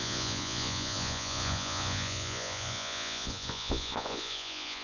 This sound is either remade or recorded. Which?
remade